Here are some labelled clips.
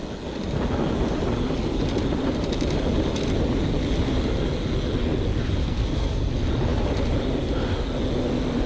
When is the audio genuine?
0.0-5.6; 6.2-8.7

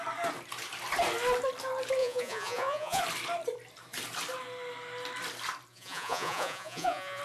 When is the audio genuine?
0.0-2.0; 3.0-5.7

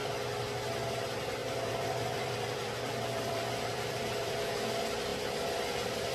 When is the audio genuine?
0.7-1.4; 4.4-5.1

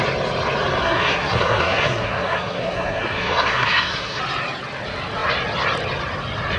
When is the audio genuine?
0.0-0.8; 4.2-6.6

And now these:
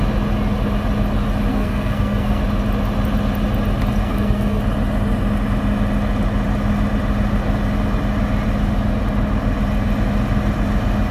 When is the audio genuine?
0.0-1.5; 2.4-4.0; 4.6-11.1